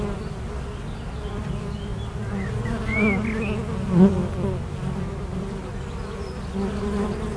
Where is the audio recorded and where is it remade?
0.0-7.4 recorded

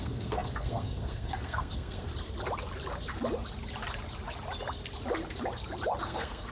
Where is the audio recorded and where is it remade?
0.0-2.1 remade; 2.1-6.0 recorded; 6.0-6.5 remade

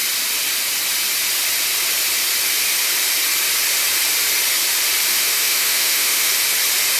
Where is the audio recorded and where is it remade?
0.0-5.1 recorded; 5.1-6.3 remade; 6.3-7.0 recorded

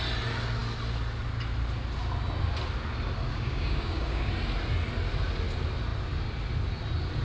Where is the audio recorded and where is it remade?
0.0-3.3 recorded; 3.3-4.3 remade; 4.3-7.2 recorded

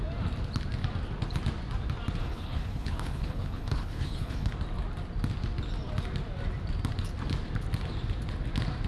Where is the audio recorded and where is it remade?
0.0-2.2 recorded; 2.2-4.5 remade; 4.5-8.9 recorded

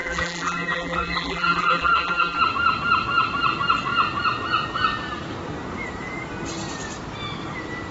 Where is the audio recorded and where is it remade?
0.0-2.4 remade; 2.4-7.9 recorded

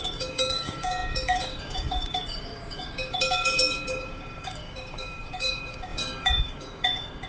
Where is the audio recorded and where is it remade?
0.0-7.3 remade

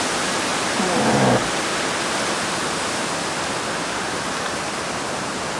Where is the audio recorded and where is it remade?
0.0-5.6 recorded